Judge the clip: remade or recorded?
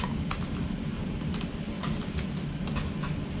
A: recorded